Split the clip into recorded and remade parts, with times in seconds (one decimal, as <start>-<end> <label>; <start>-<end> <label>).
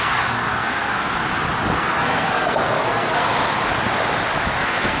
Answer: 0.0-1.2 remade; 1.2-1.8 recorded; 1.8-3.3 remade; 3.3-4.6 recorded; 4.6-5.0 remade